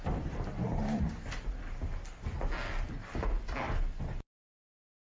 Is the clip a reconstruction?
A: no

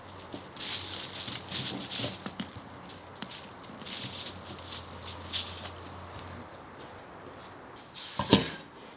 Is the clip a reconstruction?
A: no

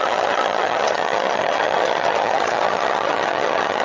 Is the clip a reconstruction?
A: yes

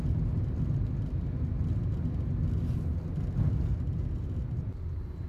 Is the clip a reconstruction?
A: no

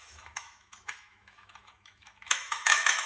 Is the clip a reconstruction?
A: yes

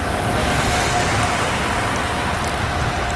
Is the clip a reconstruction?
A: no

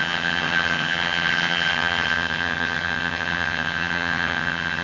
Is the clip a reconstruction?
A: yes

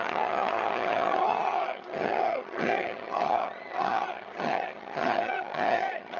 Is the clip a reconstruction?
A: yes